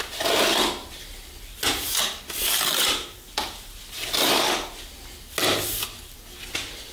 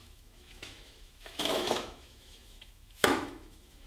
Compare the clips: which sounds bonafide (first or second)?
first